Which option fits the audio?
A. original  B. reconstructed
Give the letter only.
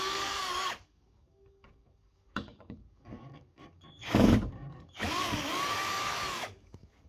B